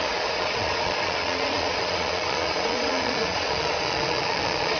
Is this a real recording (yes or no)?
no